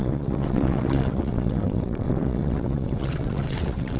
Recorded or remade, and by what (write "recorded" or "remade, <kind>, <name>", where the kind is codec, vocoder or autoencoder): remade, vocoder, WaveNeXt